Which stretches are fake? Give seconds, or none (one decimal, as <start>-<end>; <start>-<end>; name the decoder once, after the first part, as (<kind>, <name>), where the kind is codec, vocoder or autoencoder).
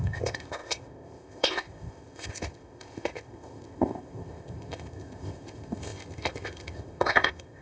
0.0-7.6 (codec, ZipCodec)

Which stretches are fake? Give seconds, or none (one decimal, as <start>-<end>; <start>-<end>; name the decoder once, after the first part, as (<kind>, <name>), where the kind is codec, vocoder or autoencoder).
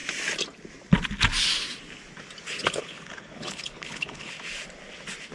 2.6-4.3 (codec, HILCodec)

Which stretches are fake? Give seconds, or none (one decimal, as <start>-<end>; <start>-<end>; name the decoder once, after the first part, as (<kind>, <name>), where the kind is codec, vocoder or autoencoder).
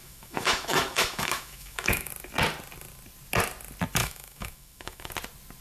0.0-2.1 (autoencoder, DAC-VAE); 4.0-5.1